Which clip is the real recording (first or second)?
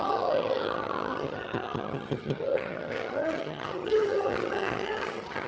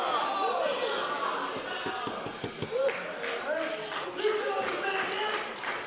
second